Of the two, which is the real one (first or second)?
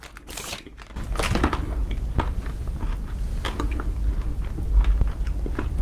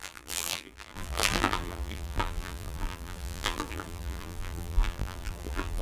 first